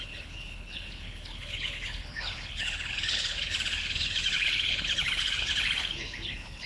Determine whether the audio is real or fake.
fake